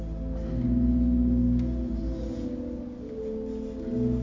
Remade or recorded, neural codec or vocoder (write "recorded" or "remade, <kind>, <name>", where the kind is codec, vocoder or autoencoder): recorded